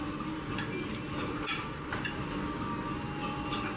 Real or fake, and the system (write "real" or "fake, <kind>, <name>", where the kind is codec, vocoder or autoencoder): real